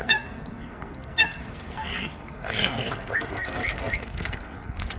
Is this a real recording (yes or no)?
no